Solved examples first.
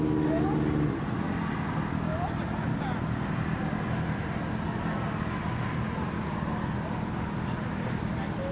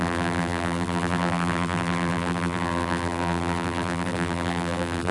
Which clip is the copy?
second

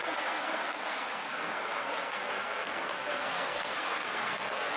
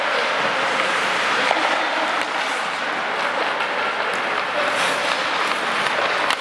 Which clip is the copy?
first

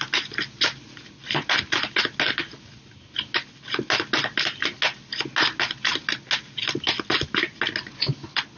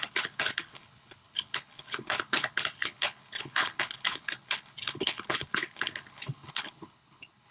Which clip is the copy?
second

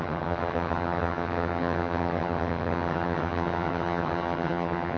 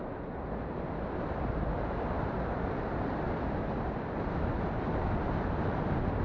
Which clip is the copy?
first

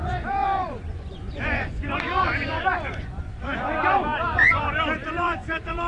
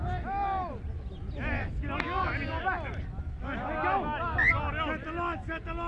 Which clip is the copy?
first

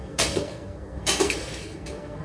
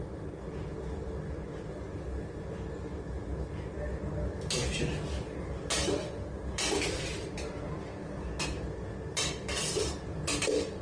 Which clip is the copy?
first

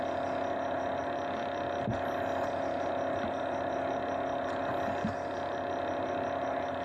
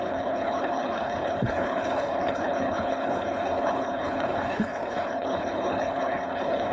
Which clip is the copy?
second